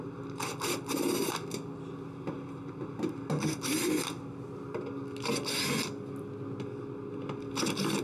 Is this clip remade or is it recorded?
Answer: recorded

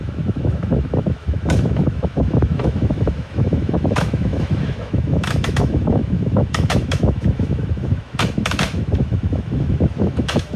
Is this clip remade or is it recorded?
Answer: remade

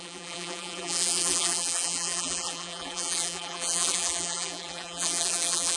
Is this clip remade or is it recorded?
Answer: remade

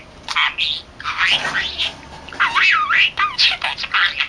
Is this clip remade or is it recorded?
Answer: recorded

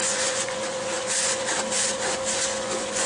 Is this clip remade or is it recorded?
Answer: remade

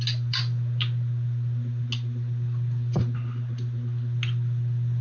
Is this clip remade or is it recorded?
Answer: recorded